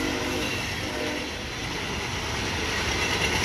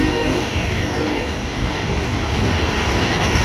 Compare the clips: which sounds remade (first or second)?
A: second